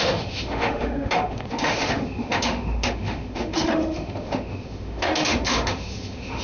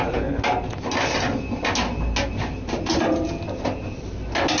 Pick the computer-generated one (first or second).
first